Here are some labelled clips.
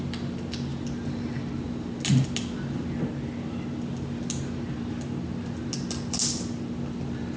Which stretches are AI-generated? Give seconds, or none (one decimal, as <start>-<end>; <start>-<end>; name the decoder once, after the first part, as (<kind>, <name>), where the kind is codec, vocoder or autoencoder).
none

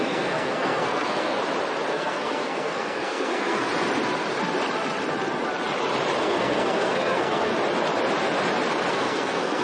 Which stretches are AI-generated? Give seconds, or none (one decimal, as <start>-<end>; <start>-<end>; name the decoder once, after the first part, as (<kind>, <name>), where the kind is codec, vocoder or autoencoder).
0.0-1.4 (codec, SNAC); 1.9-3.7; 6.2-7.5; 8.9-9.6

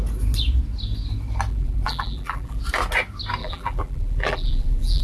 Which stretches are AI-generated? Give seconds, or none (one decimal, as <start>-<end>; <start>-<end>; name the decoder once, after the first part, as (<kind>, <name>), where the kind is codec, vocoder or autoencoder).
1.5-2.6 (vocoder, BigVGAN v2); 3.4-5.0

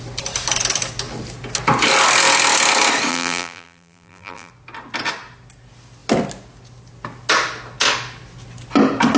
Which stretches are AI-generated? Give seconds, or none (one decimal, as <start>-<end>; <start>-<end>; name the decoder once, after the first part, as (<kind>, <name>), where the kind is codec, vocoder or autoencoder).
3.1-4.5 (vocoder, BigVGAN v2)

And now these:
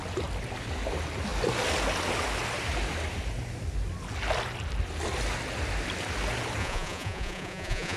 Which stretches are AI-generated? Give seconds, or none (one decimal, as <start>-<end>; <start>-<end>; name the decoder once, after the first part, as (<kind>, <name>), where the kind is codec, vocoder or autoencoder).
6.6-8.0 (vocoder, Vocos)

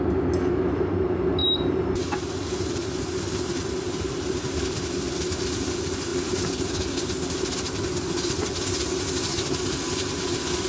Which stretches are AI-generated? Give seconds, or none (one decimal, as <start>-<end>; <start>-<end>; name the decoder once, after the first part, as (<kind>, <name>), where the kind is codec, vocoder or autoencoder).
none